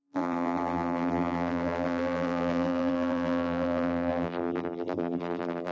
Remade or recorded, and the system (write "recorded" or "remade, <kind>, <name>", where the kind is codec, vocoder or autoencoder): remade, vocoder, BigVGAN v2